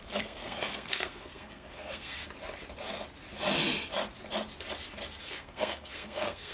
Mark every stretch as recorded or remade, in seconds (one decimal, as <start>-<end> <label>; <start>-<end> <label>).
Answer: 0.0-2.2 remade; 2.2-5.2 recorded; 5.2-6.5 remade